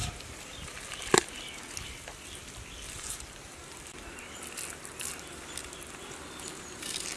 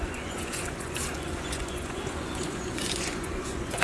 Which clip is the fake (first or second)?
second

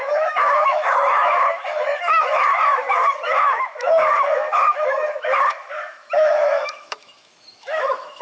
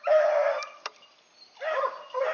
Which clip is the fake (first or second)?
first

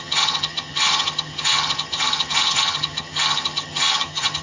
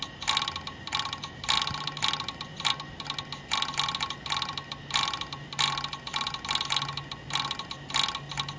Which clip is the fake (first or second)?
first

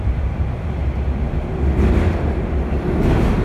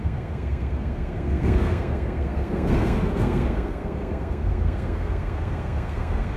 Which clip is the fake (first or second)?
second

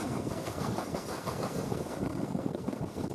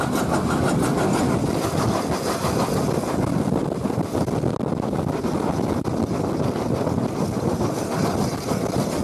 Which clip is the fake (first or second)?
first